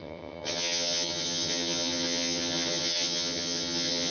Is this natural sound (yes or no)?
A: no